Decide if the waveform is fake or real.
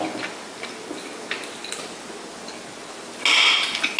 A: real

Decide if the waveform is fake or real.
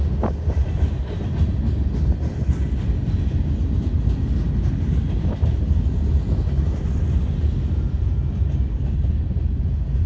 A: real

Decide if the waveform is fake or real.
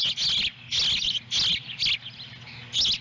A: real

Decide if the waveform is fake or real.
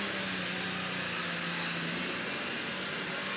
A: real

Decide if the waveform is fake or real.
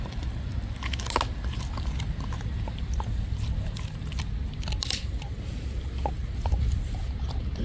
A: real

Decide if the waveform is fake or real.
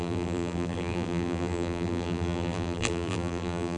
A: fake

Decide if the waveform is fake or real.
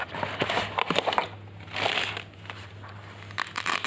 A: real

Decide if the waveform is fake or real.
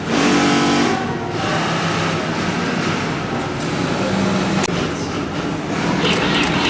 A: real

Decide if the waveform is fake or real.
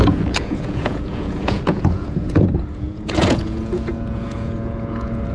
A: fake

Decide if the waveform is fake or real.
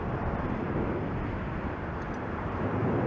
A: fake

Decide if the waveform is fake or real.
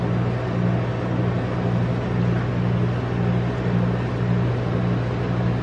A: real